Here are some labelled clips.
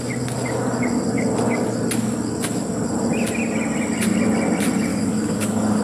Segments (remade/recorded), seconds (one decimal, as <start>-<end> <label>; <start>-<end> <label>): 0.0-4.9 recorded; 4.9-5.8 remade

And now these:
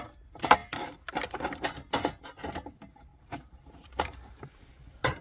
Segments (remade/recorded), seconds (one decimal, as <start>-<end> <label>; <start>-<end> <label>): 0.0-3.1 recorded; 3.1-4.0 remade; 4.0-5.2 recorded

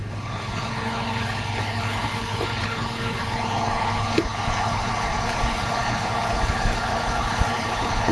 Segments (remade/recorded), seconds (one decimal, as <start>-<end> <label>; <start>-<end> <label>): 0.0-8.1 remade

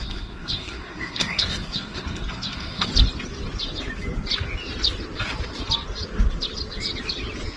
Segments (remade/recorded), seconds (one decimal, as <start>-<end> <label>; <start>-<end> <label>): 0.0-2.9 remade; 2.9-7.6 recorded

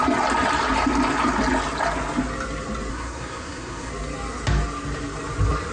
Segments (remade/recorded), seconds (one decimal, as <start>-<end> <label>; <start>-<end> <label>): 0.0-2.9 recorded; 2.9-3.9 remade; 3.9-5.7 recorded

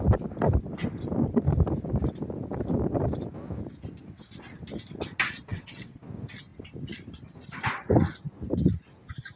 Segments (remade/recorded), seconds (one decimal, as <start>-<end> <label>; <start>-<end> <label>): 0.0-5.5 recorded; 5.5-6.0 remade; 6.0-9.4 recorded

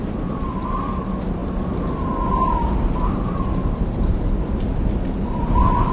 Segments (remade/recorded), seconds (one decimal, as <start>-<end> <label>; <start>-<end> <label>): 0.0-5.9 recorded

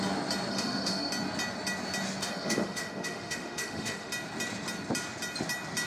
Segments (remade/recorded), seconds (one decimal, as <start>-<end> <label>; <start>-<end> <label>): 0.0-0.5 recorded; 0.5-1.1 remade; 1.1-2.2 recorded; 2.2-4.1 remade; 4.1-5.9 recorded